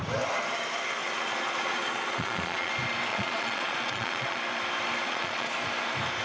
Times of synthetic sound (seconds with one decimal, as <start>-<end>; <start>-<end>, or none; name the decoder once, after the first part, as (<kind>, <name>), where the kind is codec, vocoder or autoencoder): 1.0-2.7 (vocoder, Vocos); 3.1-4.4; 5.0-5.5